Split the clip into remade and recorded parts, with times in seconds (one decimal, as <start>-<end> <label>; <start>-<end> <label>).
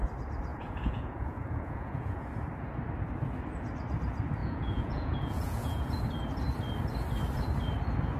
0.0-0.5 recorded; 0.5-2.3 remade; 2.3-4.4 recorded; 4.4-6.0 remade; 6.0-8.2 recorded